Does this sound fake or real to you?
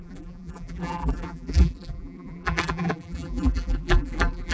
fake